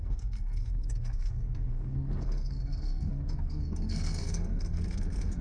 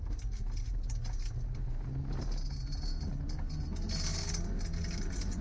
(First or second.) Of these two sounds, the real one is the second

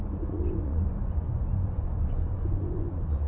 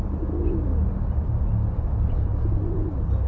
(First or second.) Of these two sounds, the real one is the second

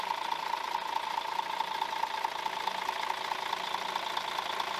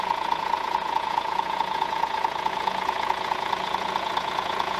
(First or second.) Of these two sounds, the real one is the first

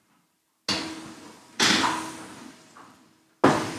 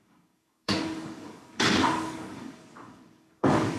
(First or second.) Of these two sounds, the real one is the first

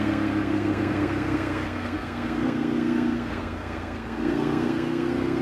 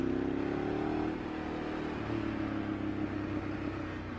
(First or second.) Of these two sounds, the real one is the second